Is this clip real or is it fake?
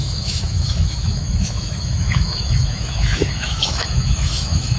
fake